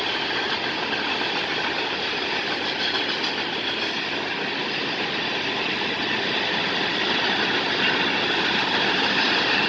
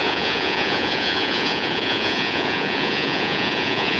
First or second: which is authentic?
first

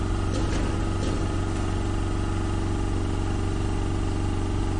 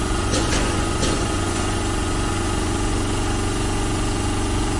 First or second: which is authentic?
first